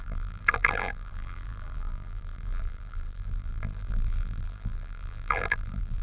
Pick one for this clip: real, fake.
fake